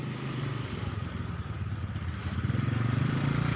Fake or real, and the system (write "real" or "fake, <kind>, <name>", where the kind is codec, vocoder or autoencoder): real